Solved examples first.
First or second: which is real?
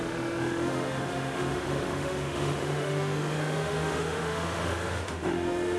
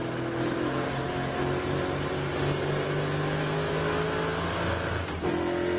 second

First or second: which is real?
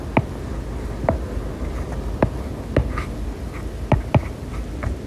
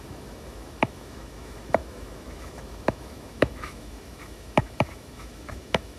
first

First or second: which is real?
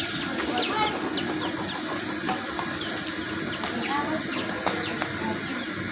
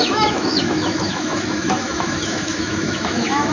first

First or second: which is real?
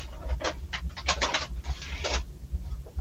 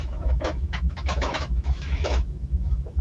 first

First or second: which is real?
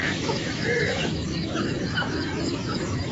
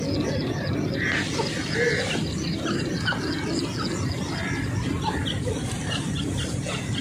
second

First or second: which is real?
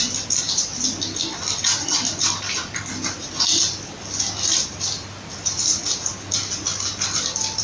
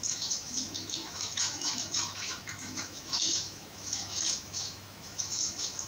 first